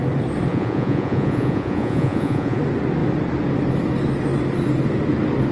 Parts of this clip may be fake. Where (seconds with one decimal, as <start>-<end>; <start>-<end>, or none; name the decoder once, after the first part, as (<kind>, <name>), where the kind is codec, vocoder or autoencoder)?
0.5-2.6 (vocoder, Vocos)